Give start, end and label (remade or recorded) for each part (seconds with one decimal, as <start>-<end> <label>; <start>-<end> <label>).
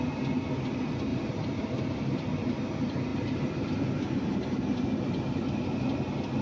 0.0-1.1 recorded; 1.1-2.5 remade; 2.5-3.1 recorded; 3.1-4.8 remade; 4.8-6.4 recorded